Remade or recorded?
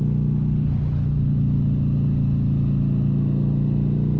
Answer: recorded